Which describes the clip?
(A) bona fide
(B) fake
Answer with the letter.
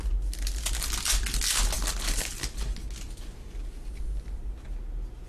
A